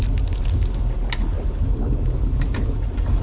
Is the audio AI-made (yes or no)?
no